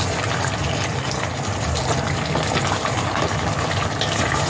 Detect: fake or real real